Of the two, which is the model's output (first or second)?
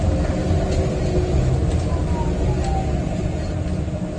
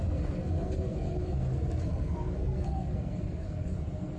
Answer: second